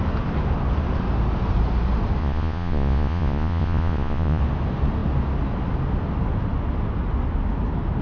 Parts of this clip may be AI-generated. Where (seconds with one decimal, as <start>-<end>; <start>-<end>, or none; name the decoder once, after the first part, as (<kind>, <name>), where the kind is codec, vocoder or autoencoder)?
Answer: 2.2-4.4 (vocoder, Vocos)